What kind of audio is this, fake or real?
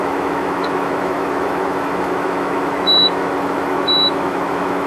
fake